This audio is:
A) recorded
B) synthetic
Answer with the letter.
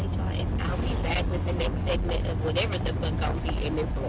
A